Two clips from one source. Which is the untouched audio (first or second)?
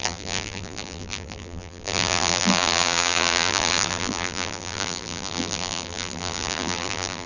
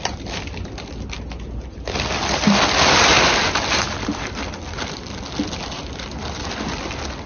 second